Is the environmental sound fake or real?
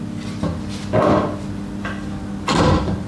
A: real